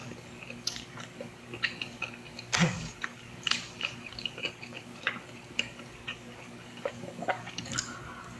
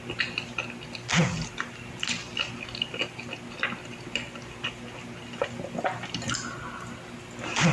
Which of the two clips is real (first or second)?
second